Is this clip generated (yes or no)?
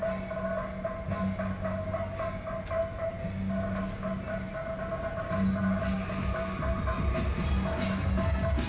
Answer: no